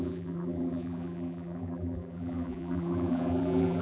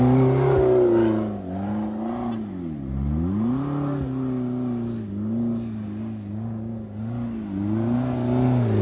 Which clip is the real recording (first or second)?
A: second